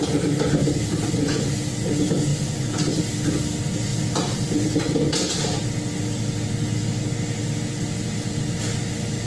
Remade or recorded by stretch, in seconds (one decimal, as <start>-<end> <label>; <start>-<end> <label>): 0.0-0.7 remade; 0.7-2.3 recorded; 2.3-3.0 remade; 3.0-3.9 recorded; 3.9-4.8 remade; 4.8-9.3 recorded